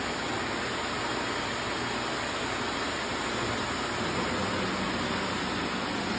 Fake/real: real